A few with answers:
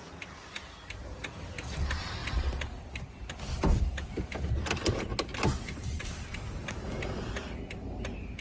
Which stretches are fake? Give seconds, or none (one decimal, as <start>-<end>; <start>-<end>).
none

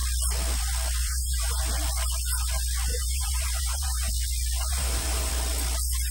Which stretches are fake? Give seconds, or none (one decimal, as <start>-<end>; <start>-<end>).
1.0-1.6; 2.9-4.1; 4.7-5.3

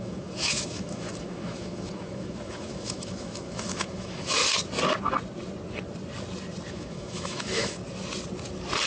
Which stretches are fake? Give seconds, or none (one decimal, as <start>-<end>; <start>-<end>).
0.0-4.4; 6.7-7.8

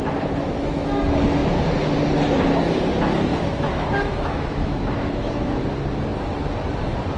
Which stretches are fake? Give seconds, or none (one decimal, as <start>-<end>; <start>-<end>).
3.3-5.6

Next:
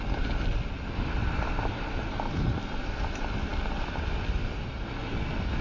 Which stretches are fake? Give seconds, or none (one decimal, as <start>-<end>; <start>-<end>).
none

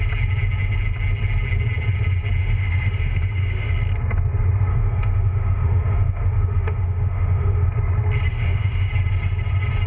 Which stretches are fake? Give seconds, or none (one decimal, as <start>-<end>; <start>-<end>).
2.4-3.7; 4.7-7.7; 8.3-8.9

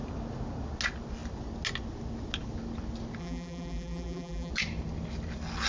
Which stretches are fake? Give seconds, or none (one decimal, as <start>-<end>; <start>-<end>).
3.2-4.5